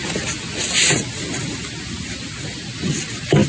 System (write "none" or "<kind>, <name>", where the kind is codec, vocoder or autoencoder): none